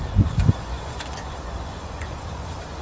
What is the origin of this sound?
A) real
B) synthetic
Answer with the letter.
B